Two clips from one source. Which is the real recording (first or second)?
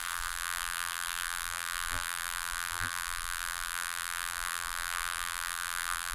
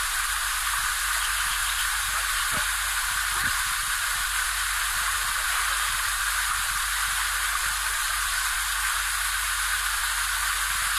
second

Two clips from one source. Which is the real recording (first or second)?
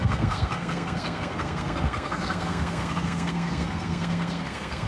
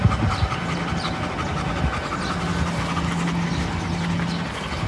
second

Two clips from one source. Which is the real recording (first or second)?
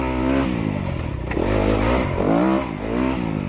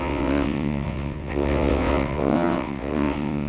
first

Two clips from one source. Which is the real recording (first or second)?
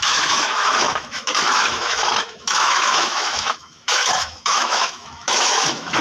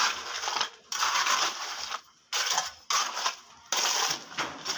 second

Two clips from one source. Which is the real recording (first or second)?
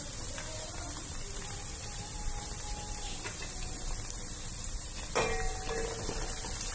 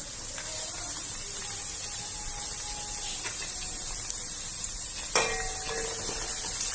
second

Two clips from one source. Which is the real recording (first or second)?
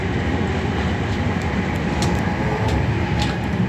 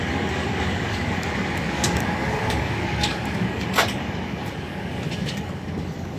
first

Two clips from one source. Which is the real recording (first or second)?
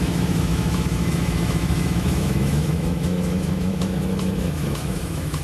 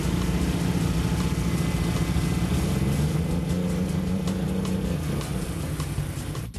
second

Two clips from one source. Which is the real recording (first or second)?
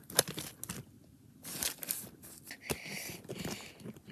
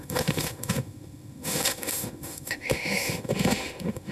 first